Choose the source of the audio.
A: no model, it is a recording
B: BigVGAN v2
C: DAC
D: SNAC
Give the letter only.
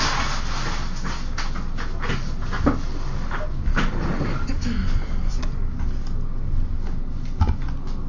A